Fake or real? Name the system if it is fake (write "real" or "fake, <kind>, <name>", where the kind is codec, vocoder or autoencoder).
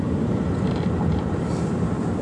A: fake, vocoder, BigVGAN v2